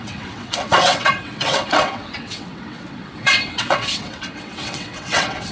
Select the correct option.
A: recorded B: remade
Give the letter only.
B